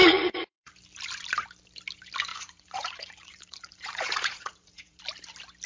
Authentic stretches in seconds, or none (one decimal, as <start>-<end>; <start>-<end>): 0.7-2.3; 5.0-5.7